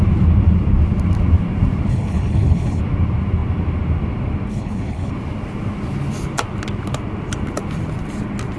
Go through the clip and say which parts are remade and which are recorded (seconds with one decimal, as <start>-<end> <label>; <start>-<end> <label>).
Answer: 0.0-1.9 recorded; 1.9-2.8 remade; 2.8-4.5 recorded; 4.5-5.1 remade; 5.1-8.6 recorded